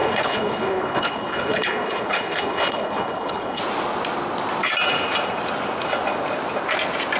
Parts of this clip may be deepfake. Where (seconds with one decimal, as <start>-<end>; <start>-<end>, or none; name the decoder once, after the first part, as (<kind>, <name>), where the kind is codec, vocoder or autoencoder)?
0.0-3.6 (codec, HILCodec)